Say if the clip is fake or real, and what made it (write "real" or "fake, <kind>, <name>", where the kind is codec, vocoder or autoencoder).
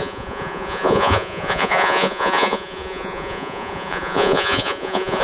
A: fake, vocoder, Vocos